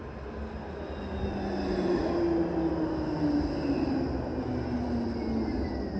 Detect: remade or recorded recorded